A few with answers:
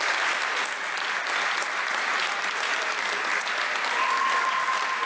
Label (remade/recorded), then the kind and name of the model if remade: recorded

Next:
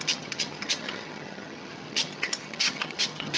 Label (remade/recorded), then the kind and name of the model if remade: remade, vocoder, HiFi-GAN